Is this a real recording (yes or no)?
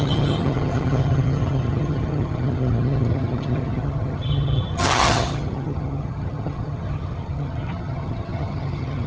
no